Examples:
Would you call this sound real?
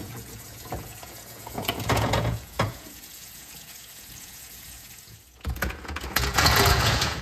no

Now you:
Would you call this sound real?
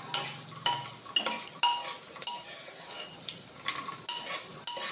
yes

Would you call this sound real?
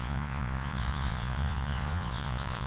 no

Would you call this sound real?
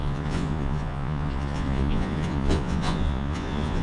no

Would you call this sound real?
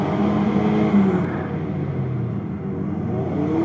yes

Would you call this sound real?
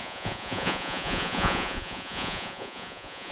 no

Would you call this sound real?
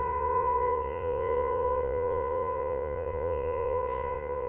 no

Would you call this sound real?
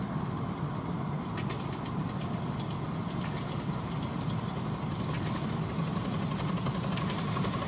yes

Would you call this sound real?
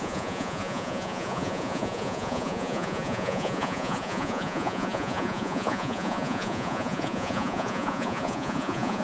no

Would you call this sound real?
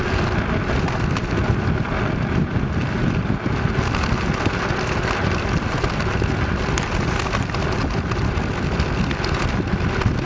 yes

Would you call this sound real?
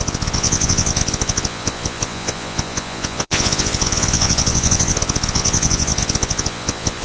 no